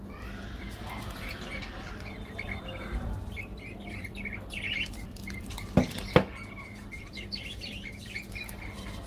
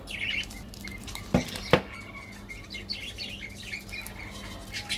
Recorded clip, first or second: second